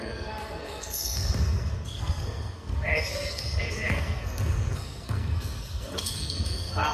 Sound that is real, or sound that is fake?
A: fake